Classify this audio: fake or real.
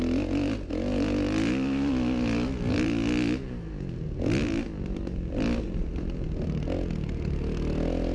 real